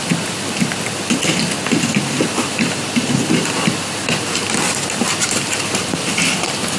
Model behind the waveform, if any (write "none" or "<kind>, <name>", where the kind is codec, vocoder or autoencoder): none